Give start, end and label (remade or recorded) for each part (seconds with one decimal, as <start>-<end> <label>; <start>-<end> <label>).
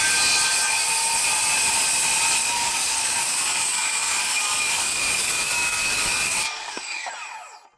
0.0-2.4 recorded; 2.4-7.1 remade; 7.1-7.8 recorded